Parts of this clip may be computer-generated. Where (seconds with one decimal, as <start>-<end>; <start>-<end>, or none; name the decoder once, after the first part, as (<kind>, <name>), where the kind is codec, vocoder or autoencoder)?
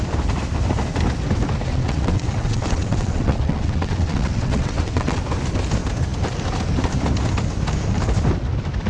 1.7-5.2 (vocoder, WaveNeXt)